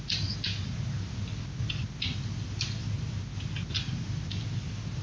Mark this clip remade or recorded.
recorded